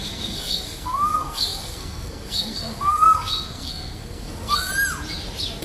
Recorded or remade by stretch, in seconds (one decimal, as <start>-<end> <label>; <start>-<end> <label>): 0.0-4.7 remade; 4.7-5.6 recorded